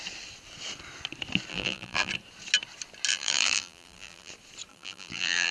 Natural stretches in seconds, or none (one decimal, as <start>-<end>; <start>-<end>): 0.0-1.5; 2.1-3.1; 4.3-4.7